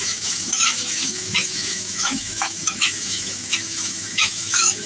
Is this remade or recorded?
remade